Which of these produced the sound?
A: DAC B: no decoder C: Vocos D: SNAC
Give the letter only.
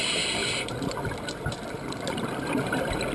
B